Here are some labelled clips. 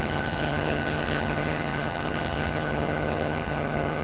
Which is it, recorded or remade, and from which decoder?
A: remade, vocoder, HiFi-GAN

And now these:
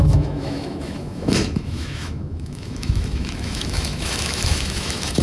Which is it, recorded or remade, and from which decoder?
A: remade, autoencoder, DAC-VAE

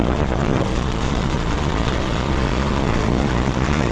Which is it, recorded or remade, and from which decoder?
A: remade, vocoder, Vocos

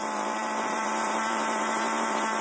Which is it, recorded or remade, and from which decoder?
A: remade, vocoder, BigVGAN v2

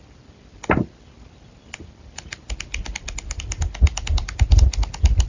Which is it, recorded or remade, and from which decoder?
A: recorded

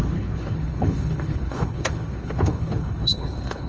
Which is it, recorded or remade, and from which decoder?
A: remade, codec, HILCodec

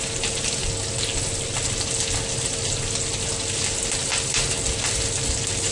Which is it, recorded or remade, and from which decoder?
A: recorded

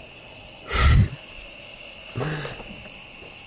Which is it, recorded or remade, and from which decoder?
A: recorded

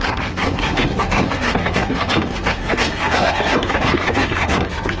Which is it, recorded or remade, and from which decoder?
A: remade, codec, SNAC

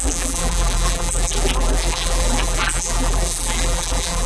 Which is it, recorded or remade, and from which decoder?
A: remade, vocoder, BigVGAN v2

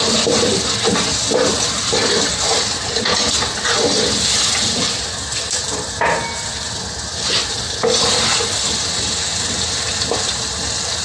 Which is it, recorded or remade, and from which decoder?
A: recorded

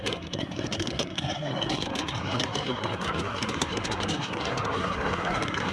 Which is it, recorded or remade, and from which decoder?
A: remade, codec, SNAC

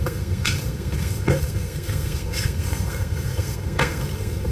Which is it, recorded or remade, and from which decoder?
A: remade, codec, SNAC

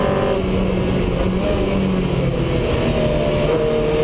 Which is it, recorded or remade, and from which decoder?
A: recorded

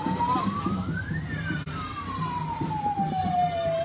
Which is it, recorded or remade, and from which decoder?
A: remade, vocoder, BigVGAN v2